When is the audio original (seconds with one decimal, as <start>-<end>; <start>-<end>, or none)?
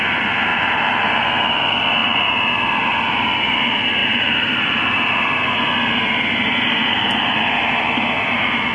0.0-0.5; 1.3-4.0; 5.1-6.8; 7.9-8.7